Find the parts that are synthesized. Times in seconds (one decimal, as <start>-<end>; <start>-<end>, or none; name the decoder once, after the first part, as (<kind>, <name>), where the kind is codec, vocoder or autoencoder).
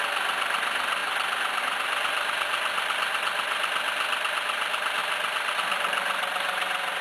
none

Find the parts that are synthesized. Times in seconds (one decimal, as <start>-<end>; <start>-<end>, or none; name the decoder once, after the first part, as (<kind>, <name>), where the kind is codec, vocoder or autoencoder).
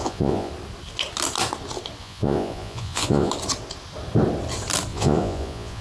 0.0-0.5 (vocoder, Vocos); 2.0-3.3; 4.9-5.8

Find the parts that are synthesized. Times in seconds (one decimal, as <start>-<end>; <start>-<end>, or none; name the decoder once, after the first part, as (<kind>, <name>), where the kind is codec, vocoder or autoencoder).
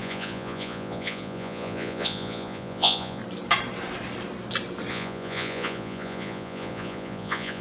0.0-3.2 (vocoder, Vocos); 4.9-7.6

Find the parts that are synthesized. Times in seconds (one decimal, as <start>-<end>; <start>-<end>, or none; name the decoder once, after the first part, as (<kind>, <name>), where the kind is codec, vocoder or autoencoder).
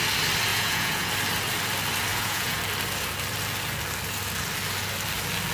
0.5-1.1 (vocoder, Vocos); 2.1-2.6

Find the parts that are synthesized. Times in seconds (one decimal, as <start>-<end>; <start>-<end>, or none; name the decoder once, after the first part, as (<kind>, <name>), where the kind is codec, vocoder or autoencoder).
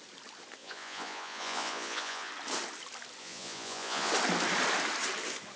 0.6-2.3 (vocoder, Vocos); 3.2-4.1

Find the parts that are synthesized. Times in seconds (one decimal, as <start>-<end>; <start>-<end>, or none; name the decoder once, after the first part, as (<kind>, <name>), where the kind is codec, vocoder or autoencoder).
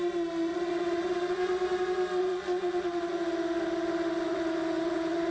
0.5-1.8 (vocoder, Vocos); 2.2-3.1; 4.3-5.3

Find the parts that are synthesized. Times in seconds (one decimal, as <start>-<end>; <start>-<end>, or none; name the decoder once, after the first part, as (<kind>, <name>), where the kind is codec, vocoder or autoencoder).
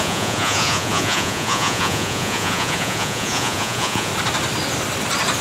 0.0-4.1 (vocoder, Vocos)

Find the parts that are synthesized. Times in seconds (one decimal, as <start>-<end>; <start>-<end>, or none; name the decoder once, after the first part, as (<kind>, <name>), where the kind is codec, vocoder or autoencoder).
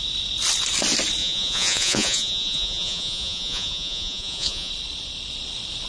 1.2-4.7 (vocoder, Vocos)